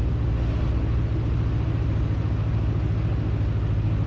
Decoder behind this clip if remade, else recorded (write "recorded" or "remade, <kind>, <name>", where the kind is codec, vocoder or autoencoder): recorded